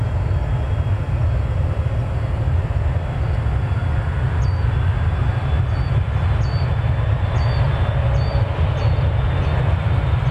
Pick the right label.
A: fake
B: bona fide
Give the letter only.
B